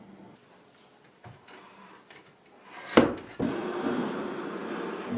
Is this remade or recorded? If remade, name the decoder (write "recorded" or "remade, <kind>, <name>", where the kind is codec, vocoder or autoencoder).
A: recorded